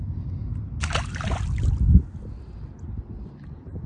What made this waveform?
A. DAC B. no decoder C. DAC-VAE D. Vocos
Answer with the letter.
B